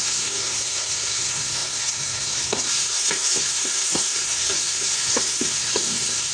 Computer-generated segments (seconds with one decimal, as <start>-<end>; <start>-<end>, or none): 0.0-6.3